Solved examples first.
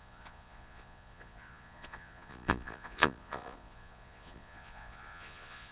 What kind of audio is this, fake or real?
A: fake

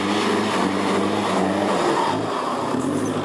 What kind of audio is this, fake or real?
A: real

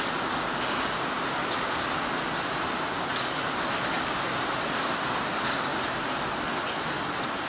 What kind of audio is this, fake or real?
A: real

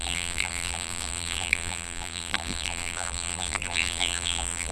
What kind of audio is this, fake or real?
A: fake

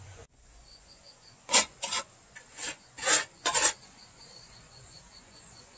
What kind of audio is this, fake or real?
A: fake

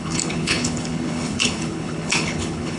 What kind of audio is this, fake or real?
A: fake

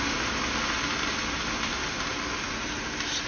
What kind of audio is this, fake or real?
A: real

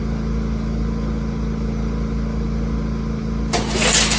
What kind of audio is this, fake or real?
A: real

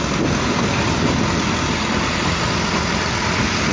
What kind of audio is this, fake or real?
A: real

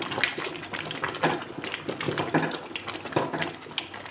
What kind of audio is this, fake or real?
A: real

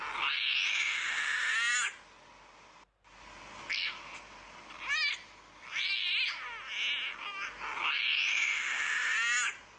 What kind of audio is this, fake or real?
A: real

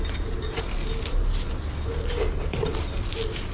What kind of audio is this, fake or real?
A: real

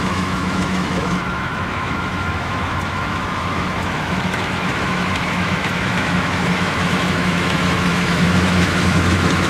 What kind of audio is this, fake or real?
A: fake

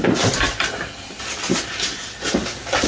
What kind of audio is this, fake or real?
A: real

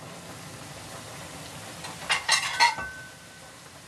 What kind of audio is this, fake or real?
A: real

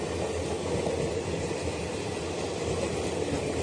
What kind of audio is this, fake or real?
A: real